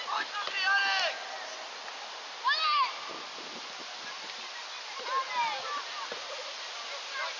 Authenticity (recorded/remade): recorded